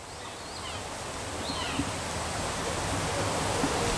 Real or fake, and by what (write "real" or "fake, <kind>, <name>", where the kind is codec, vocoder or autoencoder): real